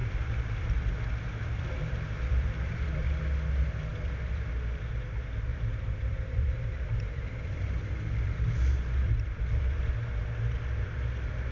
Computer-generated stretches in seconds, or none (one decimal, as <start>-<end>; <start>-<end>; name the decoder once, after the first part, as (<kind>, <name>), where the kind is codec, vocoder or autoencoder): 0.0-3.2 (vocoder, BigVGAN v2); 3.9-4.5; 5.5-9.9